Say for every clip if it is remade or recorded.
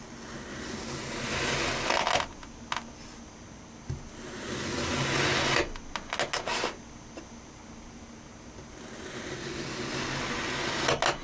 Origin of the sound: recorded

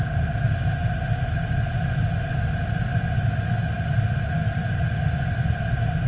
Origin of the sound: recorded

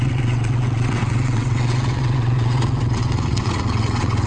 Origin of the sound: remade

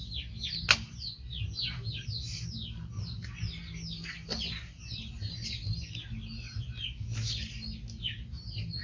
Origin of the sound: recorded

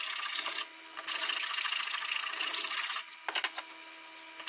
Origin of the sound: recorded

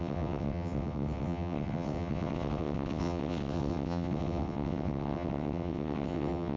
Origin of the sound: remade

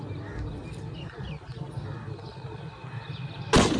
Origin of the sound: recorded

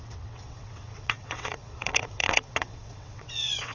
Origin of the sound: remade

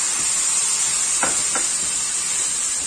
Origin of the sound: recorded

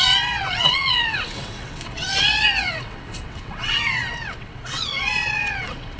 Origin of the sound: remade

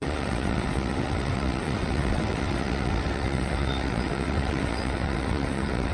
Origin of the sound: remade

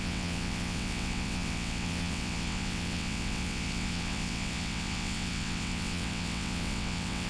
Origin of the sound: remade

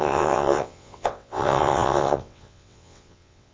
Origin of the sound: remade